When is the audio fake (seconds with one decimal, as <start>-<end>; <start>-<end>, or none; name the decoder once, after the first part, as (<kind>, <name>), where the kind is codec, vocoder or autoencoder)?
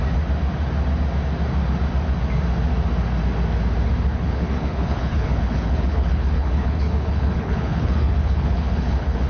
4.1-9.3 (codec, HILCodec)